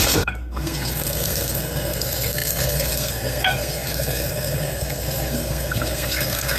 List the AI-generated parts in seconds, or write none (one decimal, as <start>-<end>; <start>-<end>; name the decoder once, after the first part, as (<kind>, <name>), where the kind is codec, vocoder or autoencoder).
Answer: 0.0-6.6 (codec, SNAC)